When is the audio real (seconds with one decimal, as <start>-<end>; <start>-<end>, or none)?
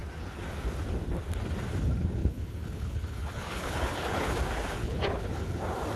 0.0-2.2; 4.3-4.8; 5.6-6.0